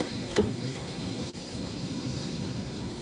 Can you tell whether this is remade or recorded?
remade